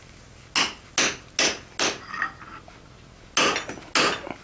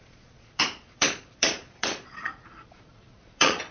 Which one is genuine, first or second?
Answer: first